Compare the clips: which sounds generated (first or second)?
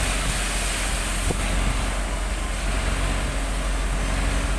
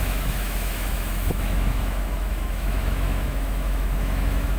second